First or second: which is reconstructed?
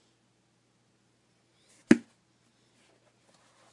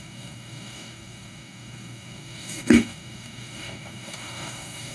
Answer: second